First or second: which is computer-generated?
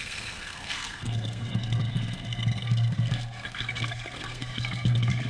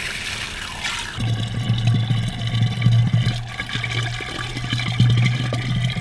first